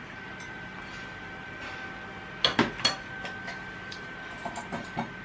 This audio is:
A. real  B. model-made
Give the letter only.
A